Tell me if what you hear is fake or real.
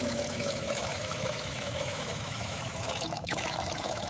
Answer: fake